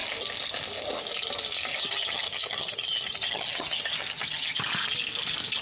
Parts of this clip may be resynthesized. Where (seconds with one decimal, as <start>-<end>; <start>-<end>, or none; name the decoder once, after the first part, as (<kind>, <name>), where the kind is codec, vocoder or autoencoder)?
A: 1.7-4.6 (vocoder, HiFi-GAN)